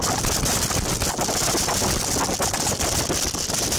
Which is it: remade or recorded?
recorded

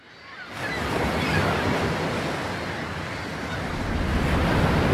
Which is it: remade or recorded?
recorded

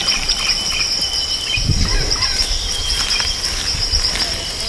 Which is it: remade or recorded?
remade